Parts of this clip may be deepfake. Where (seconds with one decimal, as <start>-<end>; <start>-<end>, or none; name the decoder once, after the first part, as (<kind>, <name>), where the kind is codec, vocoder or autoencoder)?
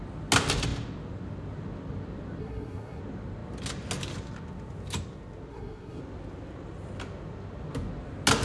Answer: 2.4-3.0 (codec, SNAC); 5.5-6.0